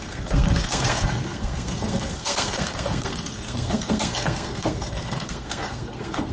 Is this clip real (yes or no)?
no